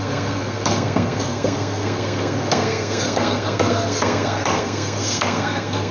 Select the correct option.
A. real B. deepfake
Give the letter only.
B